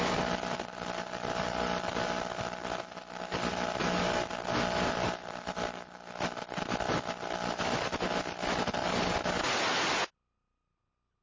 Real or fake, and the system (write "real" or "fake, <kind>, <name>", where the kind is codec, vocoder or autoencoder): real